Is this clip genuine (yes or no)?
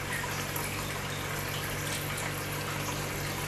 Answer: yes